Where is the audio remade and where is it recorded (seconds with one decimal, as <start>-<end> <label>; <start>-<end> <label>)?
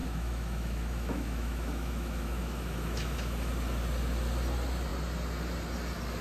0.0-3.5 remade; 3.5-6.2 recorded